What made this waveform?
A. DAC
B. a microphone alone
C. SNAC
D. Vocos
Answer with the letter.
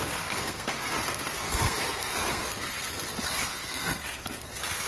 C